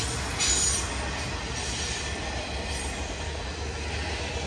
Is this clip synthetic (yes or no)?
no